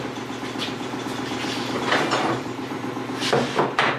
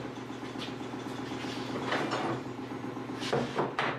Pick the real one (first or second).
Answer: second